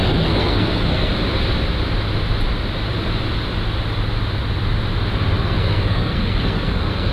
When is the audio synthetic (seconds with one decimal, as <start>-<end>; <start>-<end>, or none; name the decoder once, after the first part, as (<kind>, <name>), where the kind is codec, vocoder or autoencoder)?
0.0-1.1 (codec, SNAC); 5.4-7.1